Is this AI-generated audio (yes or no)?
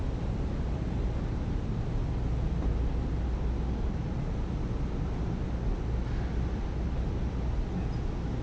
no